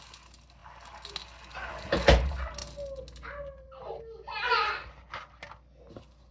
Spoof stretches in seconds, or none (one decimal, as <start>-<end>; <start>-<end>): none